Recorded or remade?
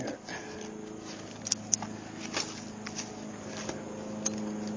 recorded